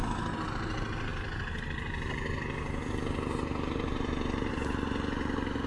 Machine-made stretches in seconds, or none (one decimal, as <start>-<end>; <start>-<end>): none